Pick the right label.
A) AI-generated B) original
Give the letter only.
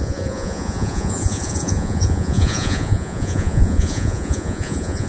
A